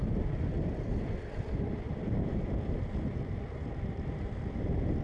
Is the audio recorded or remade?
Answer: remade